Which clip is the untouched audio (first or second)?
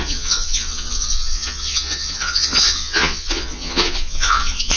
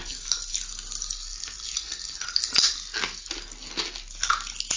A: second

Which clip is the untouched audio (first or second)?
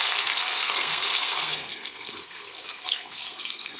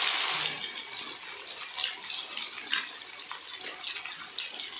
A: second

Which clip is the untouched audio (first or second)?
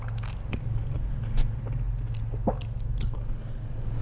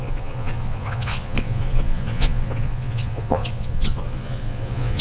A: first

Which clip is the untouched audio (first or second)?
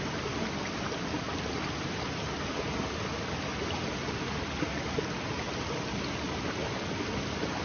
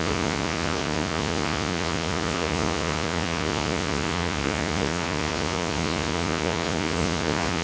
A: first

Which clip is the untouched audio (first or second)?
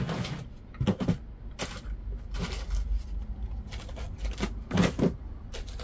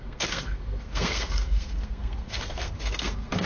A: first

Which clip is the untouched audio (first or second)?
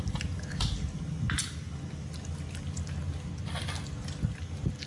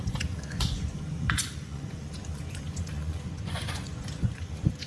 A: first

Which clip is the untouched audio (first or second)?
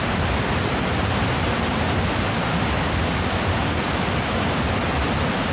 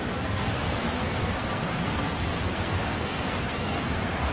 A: first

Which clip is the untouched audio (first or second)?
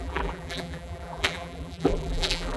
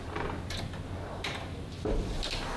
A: second